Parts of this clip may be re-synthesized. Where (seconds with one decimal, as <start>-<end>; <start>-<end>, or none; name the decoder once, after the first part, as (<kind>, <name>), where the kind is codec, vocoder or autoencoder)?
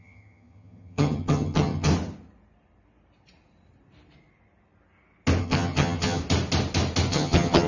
0.0-1.9 (vocoder, HiFi-GAN); 5.4-6.2; 7.1-7.7